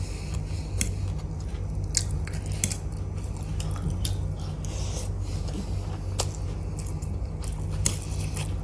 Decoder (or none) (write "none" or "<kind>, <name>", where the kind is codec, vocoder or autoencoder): none